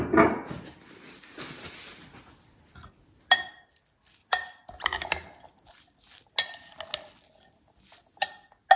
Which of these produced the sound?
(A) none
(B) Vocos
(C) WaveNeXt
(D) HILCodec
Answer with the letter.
A